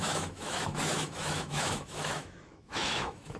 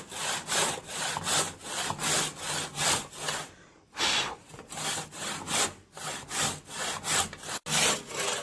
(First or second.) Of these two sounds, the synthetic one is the first